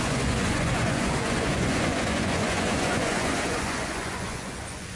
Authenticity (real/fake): fake